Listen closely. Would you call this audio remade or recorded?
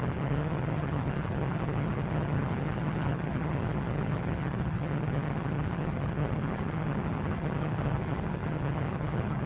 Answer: remade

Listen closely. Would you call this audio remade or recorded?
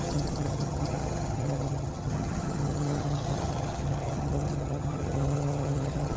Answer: remade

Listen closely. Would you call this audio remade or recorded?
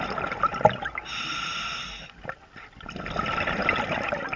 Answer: recorded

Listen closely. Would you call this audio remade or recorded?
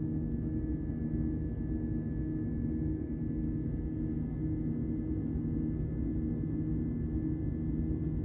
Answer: recorded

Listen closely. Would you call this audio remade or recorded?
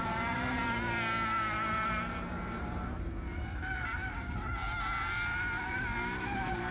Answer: recorded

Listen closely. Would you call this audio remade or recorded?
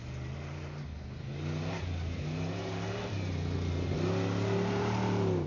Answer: recorded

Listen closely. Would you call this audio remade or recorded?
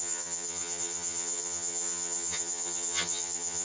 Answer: remade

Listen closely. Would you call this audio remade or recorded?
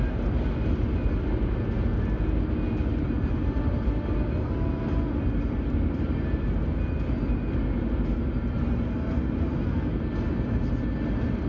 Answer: recorded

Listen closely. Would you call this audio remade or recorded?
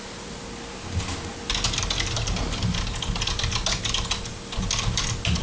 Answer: recorded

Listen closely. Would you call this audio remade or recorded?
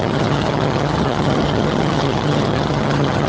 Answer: remade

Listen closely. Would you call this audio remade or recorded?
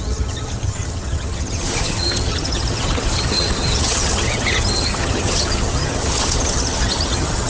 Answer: remade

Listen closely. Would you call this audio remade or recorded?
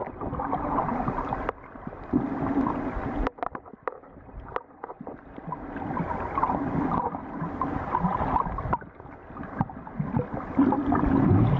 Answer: recorded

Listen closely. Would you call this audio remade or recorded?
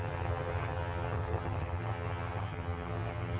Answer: remade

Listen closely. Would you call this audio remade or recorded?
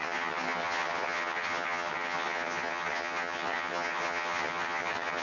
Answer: remade